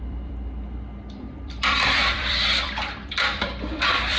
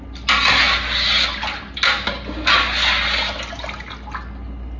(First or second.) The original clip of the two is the second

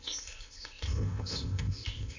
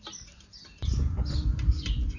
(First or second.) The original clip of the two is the second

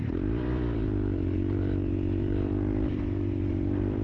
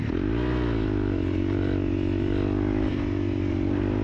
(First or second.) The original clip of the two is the second